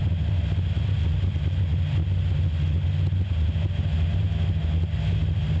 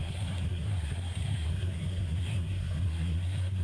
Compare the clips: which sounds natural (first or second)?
first